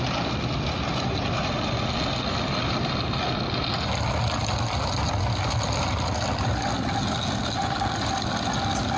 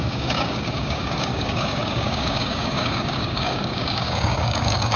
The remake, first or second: second